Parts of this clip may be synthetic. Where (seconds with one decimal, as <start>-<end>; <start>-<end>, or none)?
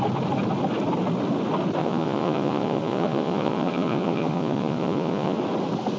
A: 1.8-5.4